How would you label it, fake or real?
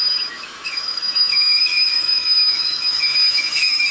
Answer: fake